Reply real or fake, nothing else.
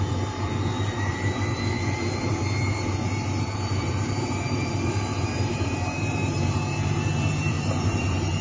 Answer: fake